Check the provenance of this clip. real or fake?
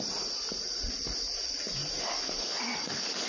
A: real